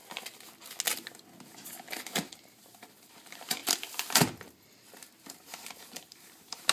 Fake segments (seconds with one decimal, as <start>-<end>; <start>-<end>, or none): 2.3-3.6; 5.6-6.7